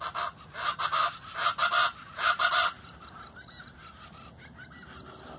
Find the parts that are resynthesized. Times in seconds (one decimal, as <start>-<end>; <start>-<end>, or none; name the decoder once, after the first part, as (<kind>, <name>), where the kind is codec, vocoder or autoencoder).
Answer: none

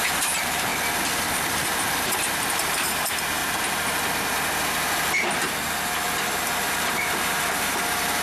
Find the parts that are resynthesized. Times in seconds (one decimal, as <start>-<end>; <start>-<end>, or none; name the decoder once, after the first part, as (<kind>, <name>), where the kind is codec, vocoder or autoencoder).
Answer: 0.0-0.7 (vocoder, BigVGAN v2); 1.3-3.4; 6.7-8.2

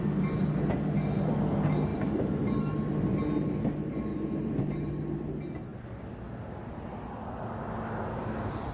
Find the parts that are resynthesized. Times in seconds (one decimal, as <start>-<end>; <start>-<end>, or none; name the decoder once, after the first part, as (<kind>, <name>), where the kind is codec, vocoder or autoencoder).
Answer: 1.9-2.5 (vocoder, BigVGAN v2); 4.1-4.9

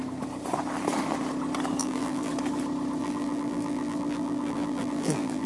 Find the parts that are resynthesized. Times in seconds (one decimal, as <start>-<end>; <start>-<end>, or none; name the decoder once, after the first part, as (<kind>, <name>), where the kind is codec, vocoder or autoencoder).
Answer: 1.8-2.3 (vocoder, BigVGAN v2); 3.0-5.5

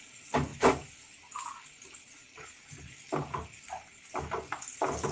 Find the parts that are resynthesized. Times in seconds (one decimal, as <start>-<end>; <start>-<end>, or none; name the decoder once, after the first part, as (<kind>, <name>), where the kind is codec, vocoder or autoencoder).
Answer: none

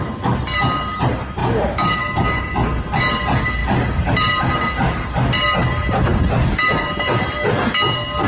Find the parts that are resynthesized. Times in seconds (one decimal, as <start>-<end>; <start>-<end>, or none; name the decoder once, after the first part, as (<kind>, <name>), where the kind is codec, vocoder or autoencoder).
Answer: none

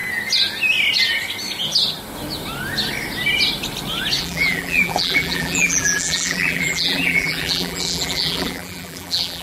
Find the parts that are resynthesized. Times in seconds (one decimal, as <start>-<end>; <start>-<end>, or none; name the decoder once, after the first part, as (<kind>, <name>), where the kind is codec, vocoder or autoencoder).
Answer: 4.2-9.4 (vocoder, BigVGAN v2)